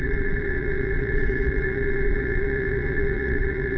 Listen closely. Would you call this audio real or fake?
fake